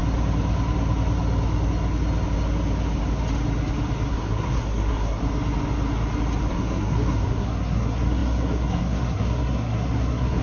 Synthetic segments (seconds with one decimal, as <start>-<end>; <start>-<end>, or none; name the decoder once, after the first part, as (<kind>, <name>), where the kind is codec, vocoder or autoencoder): 4.1-5.2 (codec, SNAC); 6.5-10.4